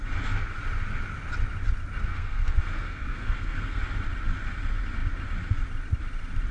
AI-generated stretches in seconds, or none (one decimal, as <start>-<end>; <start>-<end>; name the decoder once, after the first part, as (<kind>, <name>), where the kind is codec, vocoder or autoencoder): 2.1-3.8 (codec, SNAC)